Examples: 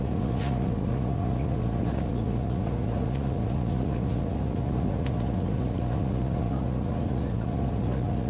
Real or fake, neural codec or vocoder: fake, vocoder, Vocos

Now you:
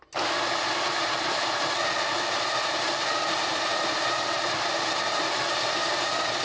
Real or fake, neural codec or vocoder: real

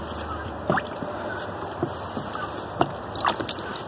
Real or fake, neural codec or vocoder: real